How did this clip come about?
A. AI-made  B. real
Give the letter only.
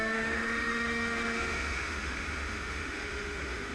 A